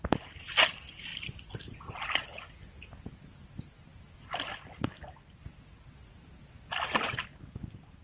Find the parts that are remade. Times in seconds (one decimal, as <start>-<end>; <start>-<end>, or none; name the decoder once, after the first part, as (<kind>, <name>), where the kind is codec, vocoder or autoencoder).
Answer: none